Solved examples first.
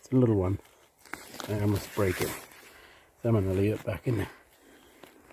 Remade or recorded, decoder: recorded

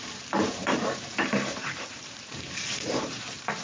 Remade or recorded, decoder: remade, vocoder, BigVGAN v2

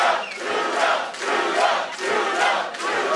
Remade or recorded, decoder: recorded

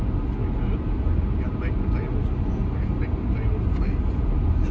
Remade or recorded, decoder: recorded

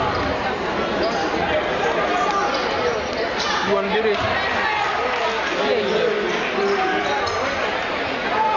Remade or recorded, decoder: recorded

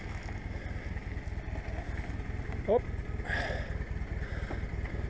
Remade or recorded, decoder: recorded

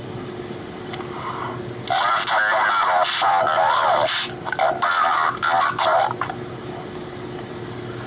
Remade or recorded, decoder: recorded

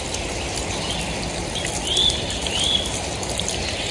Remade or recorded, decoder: recorded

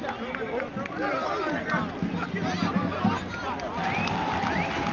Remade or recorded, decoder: recorded